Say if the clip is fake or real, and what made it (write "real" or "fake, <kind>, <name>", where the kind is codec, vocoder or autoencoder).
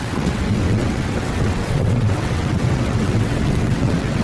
fake, vocoder, WaveNeXt